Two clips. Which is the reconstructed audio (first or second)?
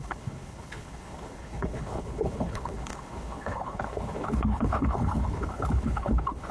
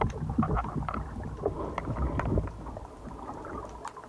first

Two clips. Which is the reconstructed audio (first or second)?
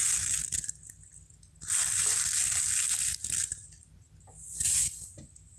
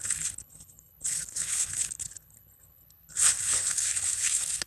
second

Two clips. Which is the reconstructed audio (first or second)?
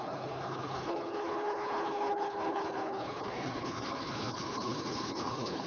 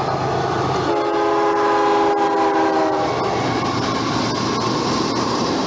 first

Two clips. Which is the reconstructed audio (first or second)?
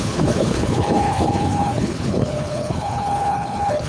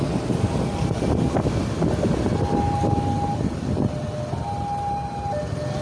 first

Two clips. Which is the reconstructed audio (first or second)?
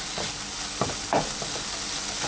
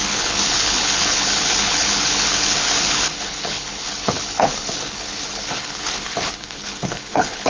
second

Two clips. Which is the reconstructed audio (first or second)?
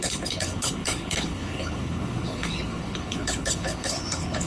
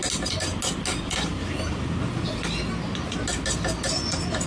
first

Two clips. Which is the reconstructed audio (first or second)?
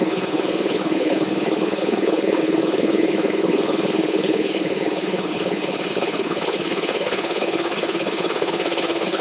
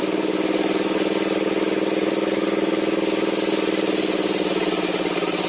first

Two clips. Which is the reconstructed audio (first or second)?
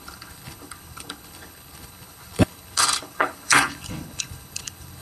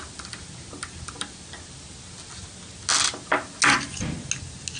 first